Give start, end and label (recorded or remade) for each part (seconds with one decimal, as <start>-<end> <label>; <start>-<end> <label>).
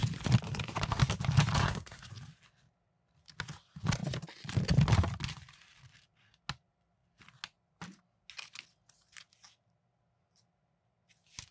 0.0-1.6 recorded; 1.6-2.1 remade; 2.1-11.5 recorded